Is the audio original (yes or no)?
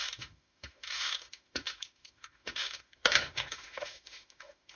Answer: no